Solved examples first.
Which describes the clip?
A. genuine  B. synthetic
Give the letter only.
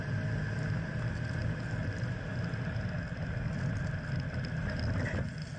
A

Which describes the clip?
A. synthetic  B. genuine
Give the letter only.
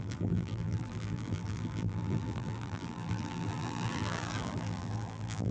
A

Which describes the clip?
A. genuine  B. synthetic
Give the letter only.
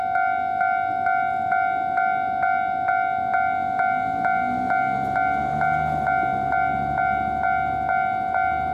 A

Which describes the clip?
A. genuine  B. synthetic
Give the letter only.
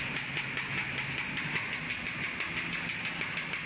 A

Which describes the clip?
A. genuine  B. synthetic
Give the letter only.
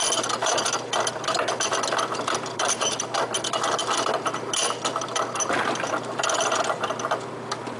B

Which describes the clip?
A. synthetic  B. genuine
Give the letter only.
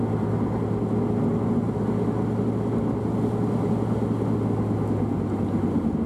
B